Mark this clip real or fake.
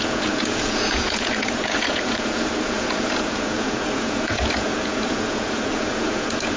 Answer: fake